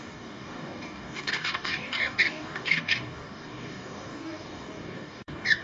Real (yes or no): no